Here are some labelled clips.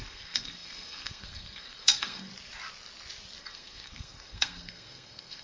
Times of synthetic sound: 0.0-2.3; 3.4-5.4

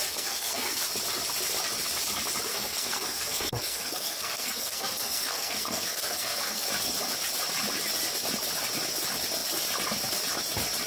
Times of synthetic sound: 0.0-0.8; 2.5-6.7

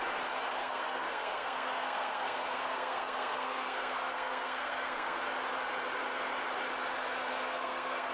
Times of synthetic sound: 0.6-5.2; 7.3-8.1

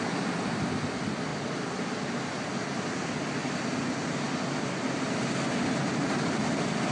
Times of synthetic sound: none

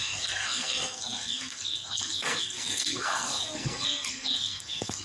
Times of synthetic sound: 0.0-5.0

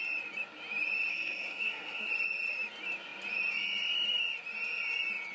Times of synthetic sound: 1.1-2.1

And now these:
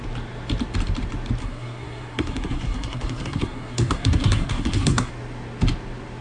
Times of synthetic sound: 1.4-5.1

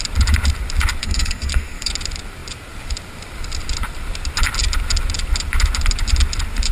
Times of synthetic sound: 1.0-1.9